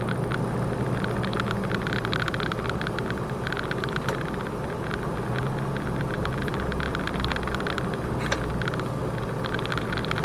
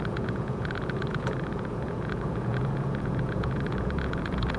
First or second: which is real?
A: first